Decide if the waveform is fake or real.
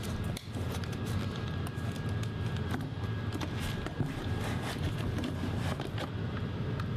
real